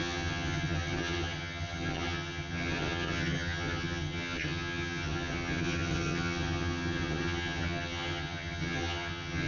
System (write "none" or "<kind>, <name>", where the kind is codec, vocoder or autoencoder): vocoder, HiFi-GAN